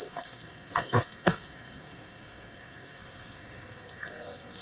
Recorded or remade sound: remade